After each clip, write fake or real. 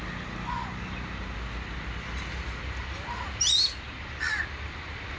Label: real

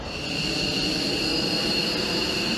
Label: real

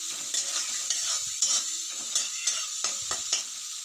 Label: real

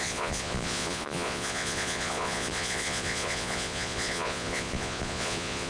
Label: fake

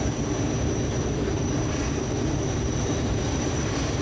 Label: fake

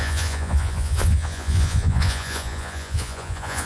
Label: fake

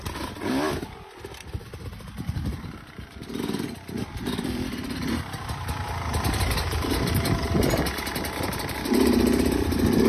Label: fake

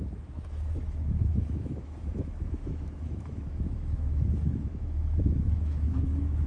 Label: fake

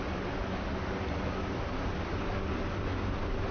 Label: real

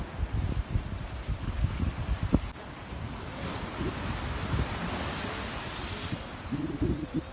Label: real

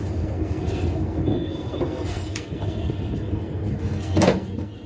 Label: fake